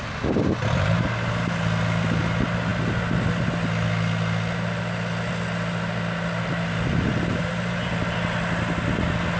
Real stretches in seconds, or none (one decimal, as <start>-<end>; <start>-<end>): 0.0-7.3; 7.9-9.4